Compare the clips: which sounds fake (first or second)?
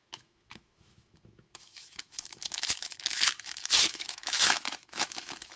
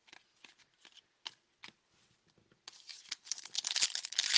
first